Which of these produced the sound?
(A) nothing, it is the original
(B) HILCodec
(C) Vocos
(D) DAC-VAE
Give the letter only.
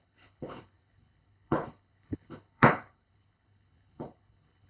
B